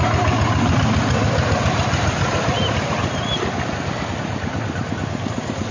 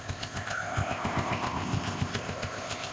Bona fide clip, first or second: first